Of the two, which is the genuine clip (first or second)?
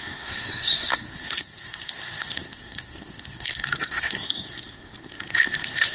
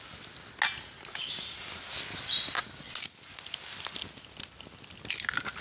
second